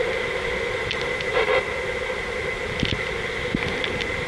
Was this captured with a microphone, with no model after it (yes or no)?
yes